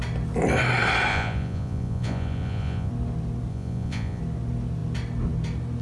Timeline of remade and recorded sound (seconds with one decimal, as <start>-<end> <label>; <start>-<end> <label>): 0.0-1.1 recorded; 1.1-2.9 remade; 2.9-3.5 recorded; 3.5-4.2 remade; 4.2-5.8 recorded